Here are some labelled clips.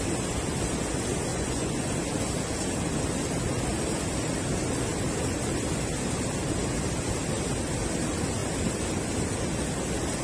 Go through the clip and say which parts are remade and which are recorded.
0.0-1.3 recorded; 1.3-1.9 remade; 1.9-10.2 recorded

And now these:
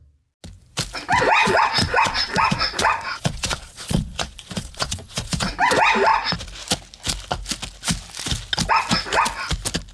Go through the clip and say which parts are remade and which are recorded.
0.0-1.4 recorded; 1.4-5.5 remade; 5.5-9.9 recorded

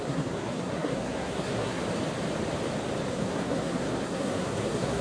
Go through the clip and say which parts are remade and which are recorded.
0.0-1.8 remade; 1.8-3.1 recorded; 3.1-5.0 remade